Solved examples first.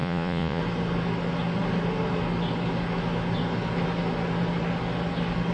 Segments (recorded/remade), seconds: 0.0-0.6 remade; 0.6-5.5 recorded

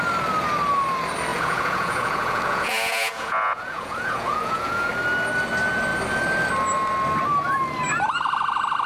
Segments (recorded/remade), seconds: 0.0-1.3 recorded; 1.3-4.9 remade; 4.9-8.9 recorded

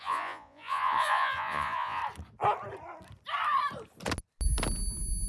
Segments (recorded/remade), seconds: 0.0-2.0 remade; 2.0-5.3 recorded

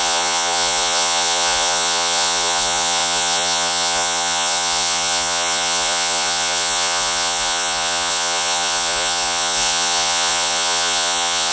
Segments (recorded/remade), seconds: 0.0-11.5 remade

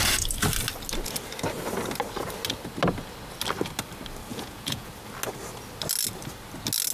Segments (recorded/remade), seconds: 0.0-4.3 recorded; 4.3-4.9 remade; 4.9-6.9 recorded